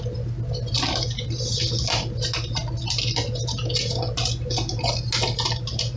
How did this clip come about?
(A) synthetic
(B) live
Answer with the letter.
B